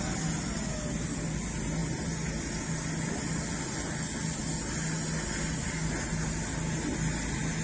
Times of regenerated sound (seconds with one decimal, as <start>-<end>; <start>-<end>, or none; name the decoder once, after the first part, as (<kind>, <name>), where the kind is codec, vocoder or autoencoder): none